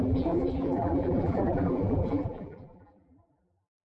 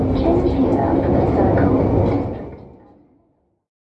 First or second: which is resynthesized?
first